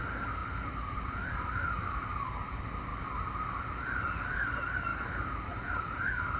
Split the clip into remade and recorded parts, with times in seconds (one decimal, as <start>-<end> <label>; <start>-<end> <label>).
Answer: 0.0-0.4 remade; 0.4-1.3 recorded; 1.3-2.9 remade; 2.9-3.6 recorded; 3.6-4.9 remade; 4.9-5.7 recorded; 5.7-6.4 remade